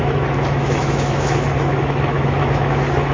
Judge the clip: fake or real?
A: fake